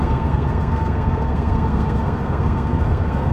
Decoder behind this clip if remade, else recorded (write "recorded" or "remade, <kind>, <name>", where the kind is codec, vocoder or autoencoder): remade, codec, SNAC